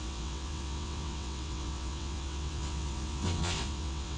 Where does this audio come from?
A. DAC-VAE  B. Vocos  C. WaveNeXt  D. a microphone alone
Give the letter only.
C